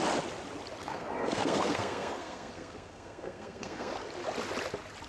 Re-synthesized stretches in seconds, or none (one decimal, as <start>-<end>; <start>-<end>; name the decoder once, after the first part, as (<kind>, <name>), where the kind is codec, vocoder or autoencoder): 0.8-3.9 (codec, SNAC)